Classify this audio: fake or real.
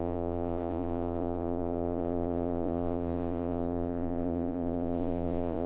fake